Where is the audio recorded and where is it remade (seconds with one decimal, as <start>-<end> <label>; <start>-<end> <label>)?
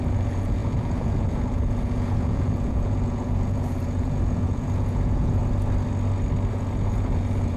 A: 0.0-5.4 remade; 5.4-6.5 recorded; 6.5-7.6 remade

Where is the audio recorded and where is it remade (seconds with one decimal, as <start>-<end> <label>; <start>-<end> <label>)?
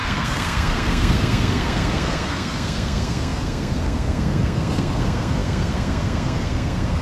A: 0.0-7.0 remade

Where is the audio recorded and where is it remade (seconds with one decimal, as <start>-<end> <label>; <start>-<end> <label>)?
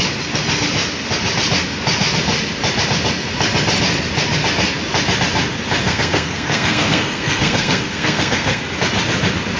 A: 0.0-5.8 recorded; 5.8-8.6 remade; 8.6-9.6 recorded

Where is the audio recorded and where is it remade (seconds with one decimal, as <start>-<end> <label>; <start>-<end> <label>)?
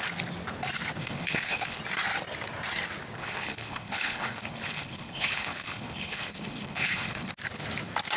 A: 0.0-1.0 recorded; 1.0-1.8 remade; 1.8-3.2 recorded; 3.2-7.3 remade; 7.3-8.2 recorded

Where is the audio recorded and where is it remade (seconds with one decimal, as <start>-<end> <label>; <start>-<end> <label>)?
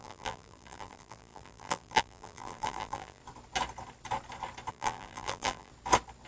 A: 0.0-3.2 remade; 3.2-4.7 recorded; 4.7-5.7 remade; 5.7-6.3 recorded